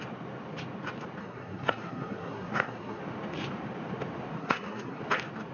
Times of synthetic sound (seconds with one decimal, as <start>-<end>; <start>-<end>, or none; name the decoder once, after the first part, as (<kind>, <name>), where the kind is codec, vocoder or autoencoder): 1.2-3.0 (codec, SNAC); 4.4-5.0